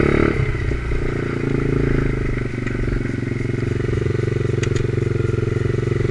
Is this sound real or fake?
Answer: real